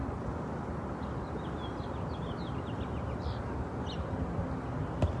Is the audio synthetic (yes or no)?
no